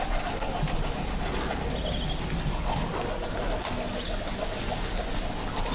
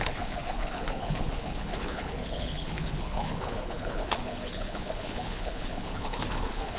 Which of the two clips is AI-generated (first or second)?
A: second